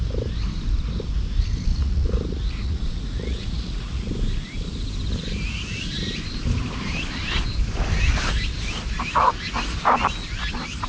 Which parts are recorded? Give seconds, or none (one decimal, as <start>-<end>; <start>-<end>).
0.0-1.7; 4.1-10.9